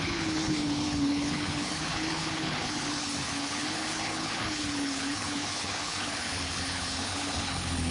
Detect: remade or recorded remade